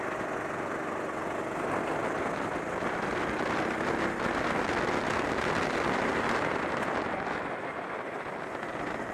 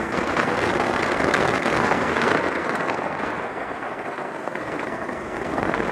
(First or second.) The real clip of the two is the first